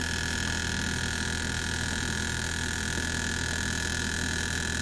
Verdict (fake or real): real